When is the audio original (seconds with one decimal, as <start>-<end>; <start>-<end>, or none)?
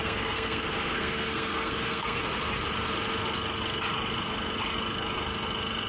2.2-5.9